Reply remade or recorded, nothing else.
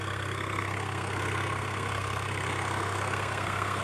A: remade